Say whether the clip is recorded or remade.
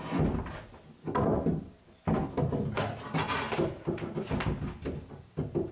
recorded